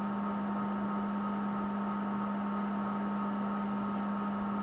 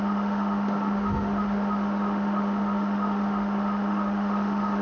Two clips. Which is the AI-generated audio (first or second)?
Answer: second